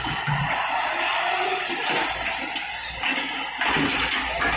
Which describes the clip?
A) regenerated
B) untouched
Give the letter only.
B